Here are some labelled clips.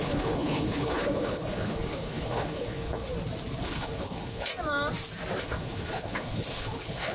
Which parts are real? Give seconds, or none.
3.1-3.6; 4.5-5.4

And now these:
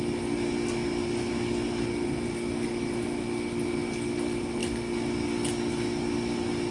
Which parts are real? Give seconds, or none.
0.0-6.7

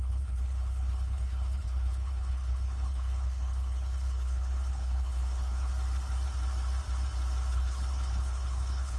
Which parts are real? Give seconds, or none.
5.7-7.5

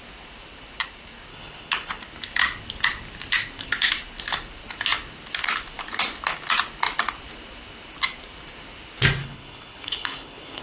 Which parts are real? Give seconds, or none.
0.0-1.3; 2.0-9.2

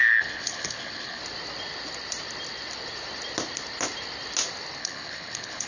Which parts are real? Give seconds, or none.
1.2-4.8

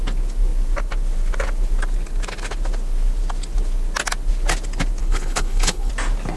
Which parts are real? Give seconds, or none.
0.0-5.0; 5.9-6.4

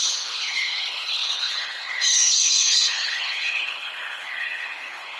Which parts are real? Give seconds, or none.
none